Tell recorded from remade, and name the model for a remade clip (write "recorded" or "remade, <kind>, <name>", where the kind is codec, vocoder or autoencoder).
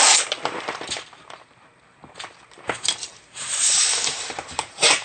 remade, vocoder, BigVGAN v2